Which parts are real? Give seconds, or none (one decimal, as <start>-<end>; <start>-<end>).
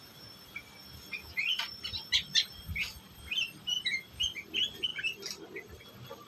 0.0-6.3